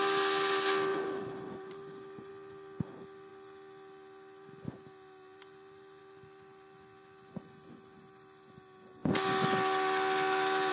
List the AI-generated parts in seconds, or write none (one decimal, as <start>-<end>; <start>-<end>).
0.9-2.3